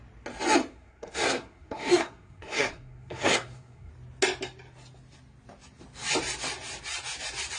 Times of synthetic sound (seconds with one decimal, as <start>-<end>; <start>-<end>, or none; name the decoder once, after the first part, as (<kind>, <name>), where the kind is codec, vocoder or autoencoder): 0.7-3.9 (codec, SNAC)